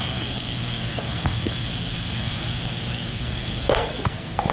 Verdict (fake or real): fake